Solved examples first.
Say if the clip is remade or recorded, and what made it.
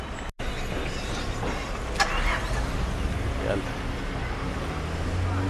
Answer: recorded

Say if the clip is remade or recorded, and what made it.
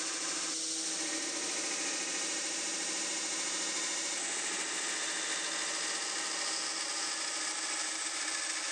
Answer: recorded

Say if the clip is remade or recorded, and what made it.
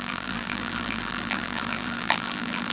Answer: remade, vocoder, BigVGAN v2